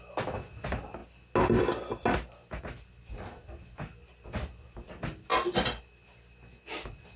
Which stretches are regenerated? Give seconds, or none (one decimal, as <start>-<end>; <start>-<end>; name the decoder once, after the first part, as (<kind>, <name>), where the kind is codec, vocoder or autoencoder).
none